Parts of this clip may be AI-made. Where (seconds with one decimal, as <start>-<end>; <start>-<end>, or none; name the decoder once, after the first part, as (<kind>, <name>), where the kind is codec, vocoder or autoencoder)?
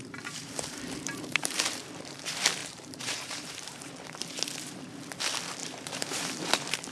0.0-1.8 (vocoder, BigVGAN v2); 2.6-3.9; 5.6-6.2